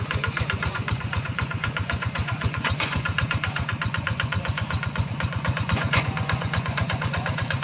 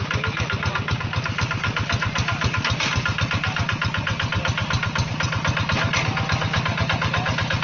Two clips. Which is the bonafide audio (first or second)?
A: second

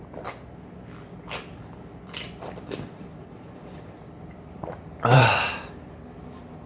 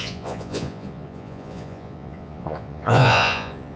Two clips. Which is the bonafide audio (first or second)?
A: first